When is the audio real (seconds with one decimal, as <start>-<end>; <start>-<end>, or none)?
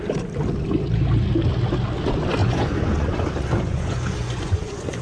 0.0-2.4